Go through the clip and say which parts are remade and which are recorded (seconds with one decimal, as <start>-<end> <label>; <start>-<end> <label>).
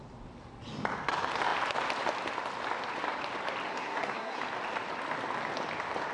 0.0-3.7 recorded; 3.7-4.4 remade; 4.4-6.1 recorded